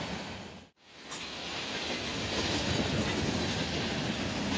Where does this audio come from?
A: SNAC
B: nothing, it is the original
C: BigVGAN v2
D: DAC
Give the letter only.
B